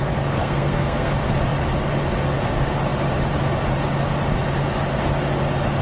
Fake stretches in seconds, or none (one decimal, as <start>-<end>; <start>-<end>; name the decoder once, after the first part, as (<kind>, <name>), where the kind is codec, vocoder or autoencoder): 0.4-1.1 (codec, SNAC)